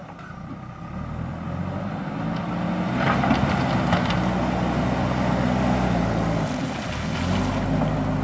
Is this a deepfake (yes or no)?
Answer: no